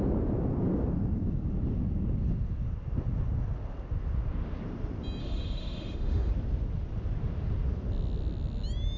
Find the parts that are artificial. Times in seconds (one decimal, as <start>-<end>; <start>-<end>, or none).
5.2-6.3